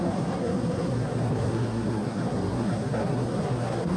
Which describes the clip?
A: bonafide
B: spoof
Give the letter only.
B